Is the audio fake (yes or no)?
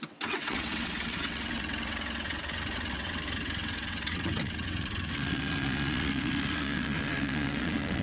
yes